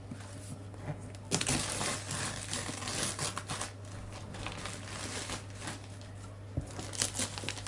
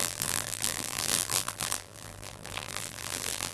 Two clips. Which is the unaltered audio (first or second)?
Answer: first